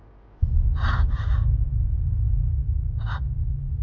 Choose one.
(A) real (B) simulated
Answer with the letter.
A